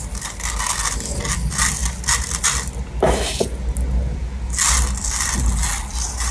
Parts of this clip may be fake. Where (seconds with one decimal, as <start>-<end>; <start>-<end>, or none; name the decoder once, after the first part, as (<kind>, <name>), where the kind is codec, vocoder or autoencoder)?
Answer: none